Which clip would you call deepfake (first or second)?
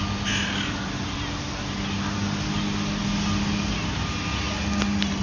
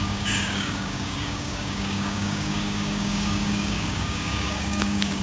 second